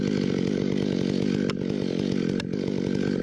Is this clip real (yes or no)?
yes